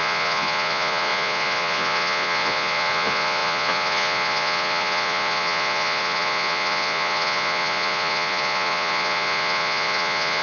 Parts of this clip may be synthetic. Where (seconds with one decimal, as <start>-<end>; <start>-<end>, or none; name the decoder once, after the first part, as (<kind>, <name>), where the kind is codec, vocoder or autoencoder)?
0.0-10.4 (vocoder, Vocos)